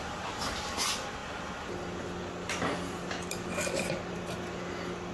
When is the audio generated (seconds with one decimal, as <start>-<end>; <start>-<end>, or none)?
none